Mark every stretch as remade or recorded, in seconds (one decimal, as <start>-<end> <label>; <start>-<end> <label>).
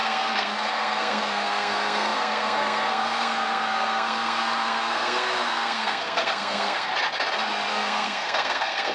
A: 0.0-6.9 remade; 6.9-7.7 recorded; 7.7-8.9 remade